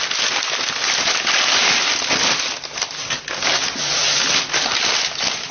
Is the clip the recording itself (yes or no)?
yes